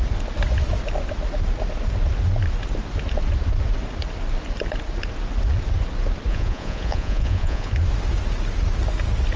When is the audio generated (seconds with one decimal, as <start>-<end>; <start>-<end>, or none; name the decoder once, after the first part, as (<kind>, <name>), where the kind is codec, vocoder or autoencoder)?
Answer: 6.3-7.7 (vocoder, Vocos)